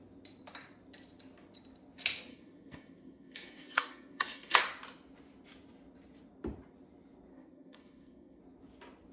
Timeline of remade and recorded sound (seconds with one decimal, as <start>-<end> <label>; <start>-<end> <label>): 0.0-2.3 recorded; 2.3-4.6 remade; 4.6-7.3 recorded; 7.3-8.4 remade; 8.4-9.1 recorded